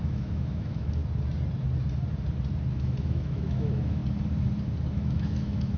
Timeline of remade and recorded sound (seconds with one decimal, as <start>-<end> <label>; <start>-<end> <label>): 0.0-1.0 remade; 1.0-2.7 recorded; 2.7-4.0 remade; 4.0-4.9 recorded; 4.9-5.8 remade